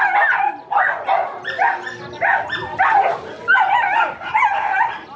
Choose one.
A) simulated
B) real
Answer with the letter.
B